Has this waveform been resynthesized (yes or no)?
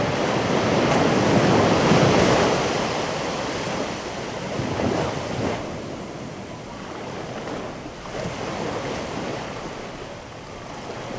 no